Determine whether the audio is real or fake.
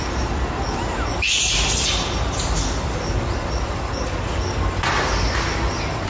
real